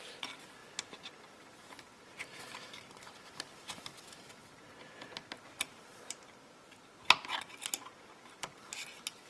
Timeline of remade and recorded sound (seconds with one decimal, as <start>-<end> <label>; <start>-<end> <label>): 0.0-4.4 remade; 4.4-9.3 recorded